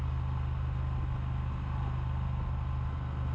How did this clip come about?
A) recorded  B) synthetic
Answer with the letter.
A